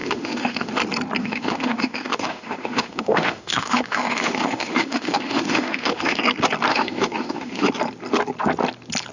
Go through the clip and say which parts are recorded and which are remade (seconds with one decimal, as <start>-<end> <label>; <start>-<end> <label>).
0.0-0.7 remade; 0.7-1.2 recorded; 1.2-6.2 remade; 6.2-6.7 recorded; 6.7-7.7 remade; 7.7-9.1 recorded